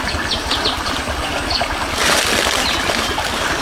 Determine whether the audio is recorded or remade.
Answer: recorded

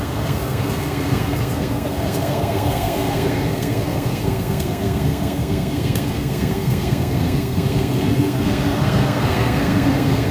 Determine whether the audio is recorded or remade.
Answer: remade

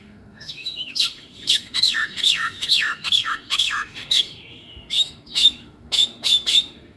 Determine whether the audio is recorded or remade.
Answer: remade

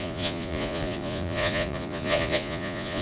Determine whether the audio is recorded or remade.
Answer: remade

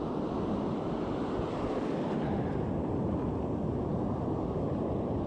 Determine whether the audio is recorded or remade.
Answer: recorded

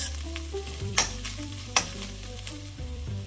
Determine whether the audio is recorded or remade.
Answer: remade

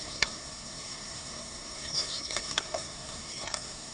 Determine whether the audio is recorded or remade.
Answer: remade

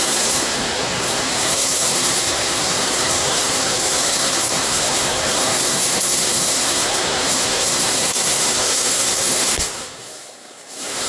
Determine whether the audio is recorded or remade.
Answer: remade